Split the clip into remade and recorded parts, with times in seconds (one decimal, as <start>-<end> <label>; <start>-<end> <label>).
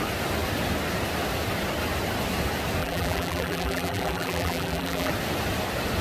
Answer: 0.0-2.8 recorded; 2.8-5.1 remade; 5.1-6.0 recorded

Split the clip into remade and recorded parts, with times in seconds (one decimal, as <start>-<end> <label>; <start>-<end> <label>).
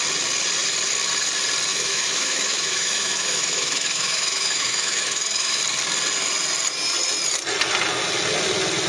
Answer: 0.0-1.7 recorded; 1.7-5.6 remade; 5.6-8.9 recorded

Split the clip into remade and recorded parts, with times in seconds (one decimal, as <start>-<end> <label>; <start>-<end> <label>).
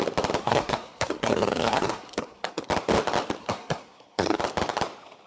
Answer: 0.0-0.4 recorded; 0.4-2.7 remade; 2.7-3.4 recorded; 3.4-4.4 remade; 4.4-5.3 recorded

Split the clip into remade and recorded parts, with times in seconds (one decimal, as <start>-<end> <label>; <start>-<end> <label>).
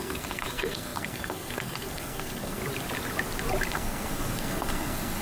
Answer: 0.0-2.6 remade; 2.6-3.7 recorded; 3.7-5.2 remade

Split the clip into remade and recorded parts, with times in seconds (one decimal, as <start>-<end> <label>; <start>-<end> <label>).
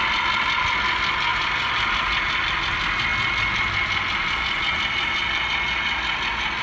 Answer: 0.0-3.1 remade; 3.1-4.7 recorded; 4.7-5.2 remade; 5.2-6.6 recorded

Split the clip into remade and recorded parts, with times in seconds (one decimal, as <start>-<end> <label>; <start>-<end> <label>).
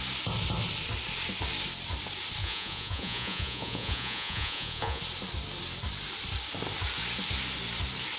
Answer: 0.0-2.4 recorded; 2.4-5.0 remade; 5.0-8.2 recorded